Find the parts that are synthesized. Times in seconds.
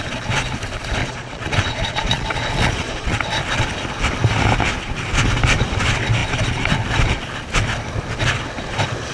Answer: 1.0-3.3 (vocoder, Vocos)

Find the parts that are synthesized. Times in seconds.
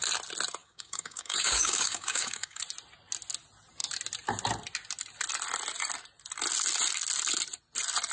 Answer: 0.6-2.6 (codec, DAC)